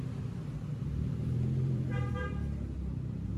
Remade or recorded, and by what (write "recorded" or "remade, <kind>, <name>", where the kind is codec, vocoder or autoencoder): remade, vocoder, BigVGAN v2